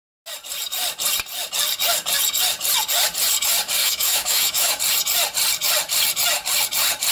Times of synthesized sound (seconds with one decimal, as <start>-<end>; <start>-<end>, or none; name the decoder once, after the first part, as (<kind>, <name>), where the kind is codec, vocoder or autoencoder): 3.8-4.8 (autoencoder, DAC-VAE)